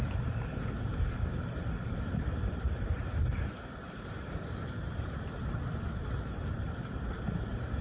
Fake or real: fake